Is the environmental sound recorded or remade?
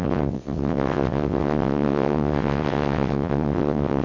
remade